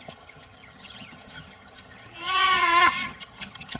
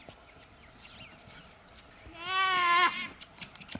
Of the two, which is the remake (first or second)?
first